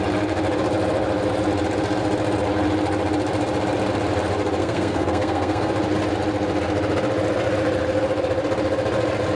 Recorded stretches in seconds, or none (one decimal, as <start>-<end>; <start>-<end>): 0.0-4.6; 5.7-9.3